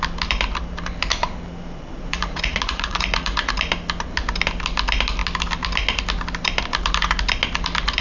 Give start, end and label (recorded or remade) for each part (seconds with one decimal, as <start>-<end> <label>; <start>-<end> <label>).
0.0-1.9 recorded; 1.9-3.5 remade; 3.5-8.0 recorded